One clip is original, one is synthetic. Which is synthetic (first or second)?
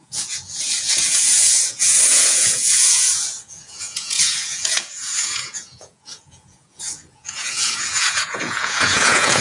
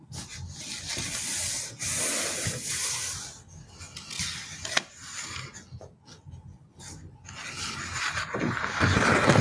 first